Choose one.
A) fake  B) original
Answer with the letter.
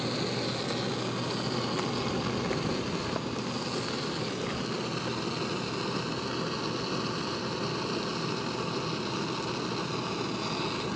B